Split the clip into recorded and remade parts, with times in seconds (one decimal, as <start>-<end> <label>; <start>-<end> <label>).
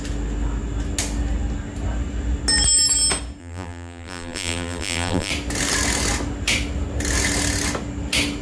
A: 0.0-3.4 recorded; 3.4-5.3 remade; 5.3-8.4 recorded